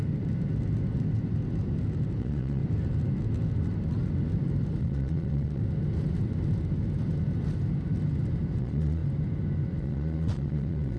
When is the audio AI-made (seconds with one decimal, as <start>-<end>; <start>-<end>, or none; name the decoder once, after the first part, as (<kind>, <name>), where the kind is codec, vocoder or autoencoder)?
2.2-2.6 (vocoder, Vocos); 4.8-5.6; 8.6-9.0; 9.8-11.0